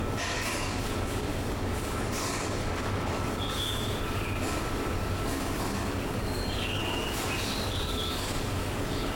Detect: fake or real fake